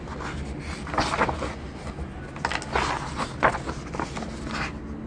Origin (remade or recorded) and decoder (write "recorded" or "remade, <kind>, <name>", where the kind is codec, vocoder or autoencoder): recorded